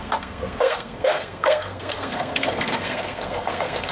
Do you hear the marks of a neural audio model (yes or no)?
yes